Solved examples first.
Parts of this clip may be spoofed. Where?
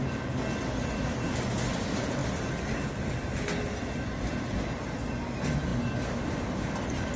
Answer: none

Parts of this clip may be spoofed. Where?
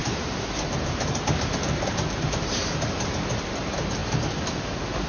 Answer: 0.0-4.0 (vocoder, BigVGAN v2)